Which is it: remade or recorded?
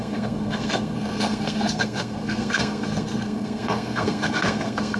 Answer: remade